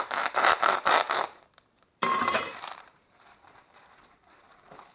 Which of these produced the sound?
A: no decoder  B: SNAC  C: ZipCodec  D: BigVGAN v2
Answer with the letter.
D